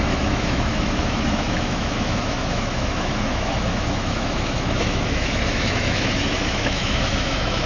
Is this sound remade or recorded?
remade